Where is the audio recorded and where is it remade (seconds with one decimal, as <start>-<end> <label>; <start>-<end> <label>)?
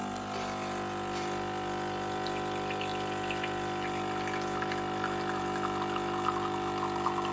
0.0-7.3 recorded